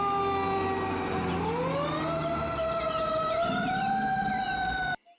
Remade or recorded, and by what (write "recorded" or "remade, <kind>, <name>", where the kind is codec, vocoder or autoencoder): recorded